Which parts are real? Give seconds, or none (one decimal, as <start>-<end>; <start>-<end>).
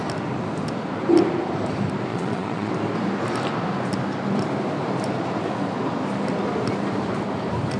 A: 0.0-2.1; 2.7-7.8